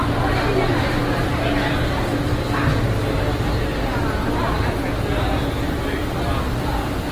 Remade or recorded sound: recorded